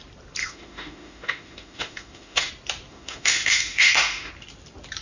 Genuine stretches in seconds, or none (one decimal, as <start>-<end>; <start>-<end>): 0.0-0.4; 2.5-2.9; 4.3-5.0